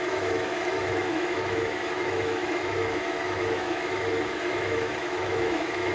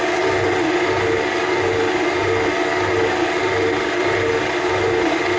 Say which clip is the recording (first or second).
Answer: second